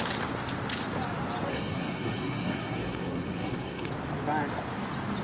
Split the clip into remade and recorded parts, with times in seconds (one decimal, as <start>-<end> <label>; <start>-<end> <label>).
0.0-1.5 recorded; 1.5-3.9 remade; 3.9-5.2 recorded